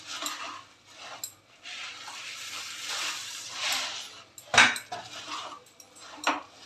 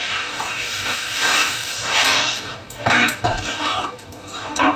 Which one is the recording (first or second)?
first